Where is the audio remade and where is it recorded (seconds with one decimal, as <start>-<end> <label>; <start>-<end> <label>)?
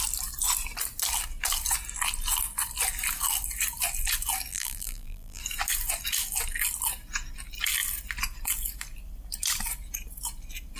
0.0-4.5 recorded; 4.5-5.4 remade; 5.4-10.8 recorded